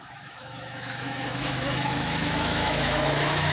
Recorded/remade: remade